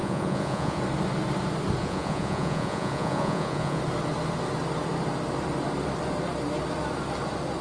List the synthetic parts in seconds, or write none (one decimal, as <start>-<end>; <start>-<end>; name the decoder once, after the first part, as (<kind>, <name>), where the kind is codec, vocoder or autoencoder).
0.0-0.8 (vocoder, Vocos); 1.8-3.8